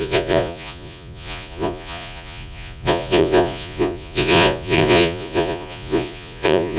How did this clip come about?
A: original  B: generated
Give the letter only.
B